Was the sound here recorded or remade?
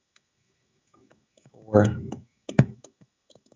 remade